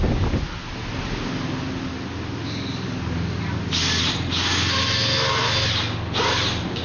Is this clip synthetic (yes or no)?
no